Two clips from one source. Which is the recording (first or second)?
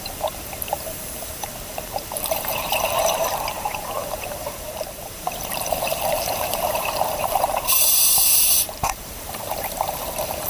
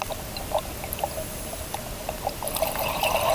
second